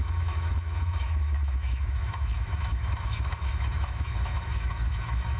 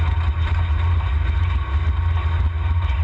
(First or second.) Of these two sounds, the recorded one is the second